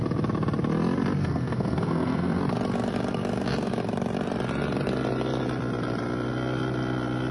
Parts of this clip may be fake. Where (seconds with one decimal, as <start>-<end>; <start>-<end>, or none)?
1.2-2.4